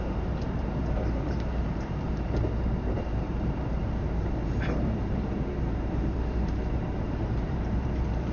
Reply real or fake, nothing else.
fake